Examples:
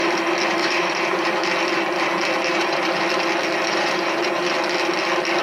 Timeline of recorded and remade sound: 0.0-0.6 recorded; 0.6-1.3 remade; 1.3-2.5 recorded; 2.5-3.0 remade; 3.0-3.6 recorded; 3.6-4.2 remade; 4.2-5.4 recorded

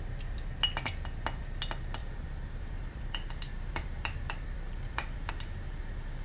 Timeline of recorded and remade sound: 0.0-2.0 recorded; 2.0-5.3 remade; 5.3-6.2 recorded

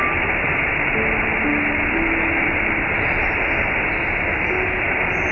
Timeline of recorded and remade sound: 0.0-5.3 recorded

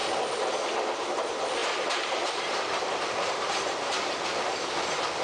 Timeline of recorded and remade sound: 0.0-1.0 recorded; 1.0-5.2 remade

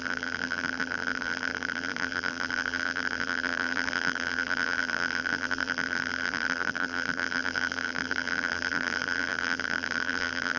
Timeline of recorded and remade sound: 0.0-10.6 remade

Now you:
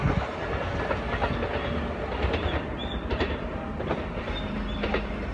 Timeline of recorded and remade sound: 0.0-3.2 recorded; 3.2-5.3 remade

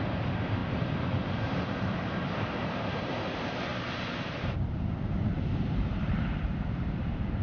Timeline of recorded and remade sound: 0.0-3.7 remade; 3.7-4.4 recorded; 4.4-7.4 remade